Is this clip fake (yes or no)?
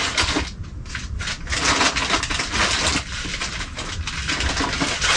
no